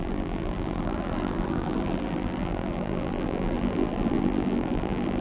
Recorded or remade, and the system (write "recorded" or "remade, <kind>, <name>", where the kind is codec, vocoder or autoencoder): remade, vocoder, BigVGAN v2